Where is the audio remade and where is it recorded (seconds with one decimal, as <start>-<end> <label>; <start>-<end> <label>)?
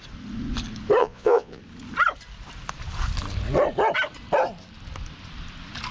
0.0-1.0 recorded; 1.0-1.6 remade; 1.6-5.9 recorded